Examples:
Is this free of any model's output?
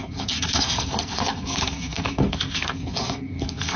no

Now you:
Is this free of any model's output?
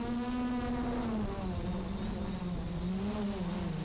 yes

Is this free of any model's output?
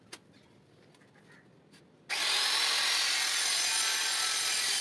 yes